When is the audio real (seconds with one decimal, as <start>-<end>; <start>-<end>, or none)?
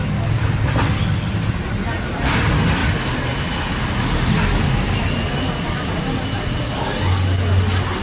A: 0.0-8.0